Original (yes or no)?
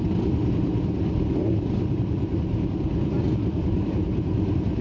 no